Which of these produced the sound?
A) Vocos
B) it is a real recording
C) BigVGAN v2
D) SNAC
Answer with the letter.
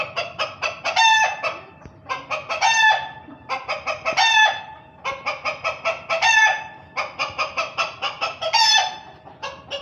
B